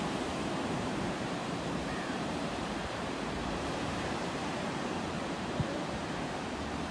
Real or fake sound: fake